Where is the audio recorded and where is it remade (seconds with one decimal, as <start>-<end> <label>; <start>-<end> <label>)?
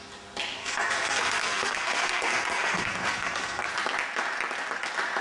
0.0-0.6 recorded; 0.6-3.7 remade; 3.7-5.2 recorded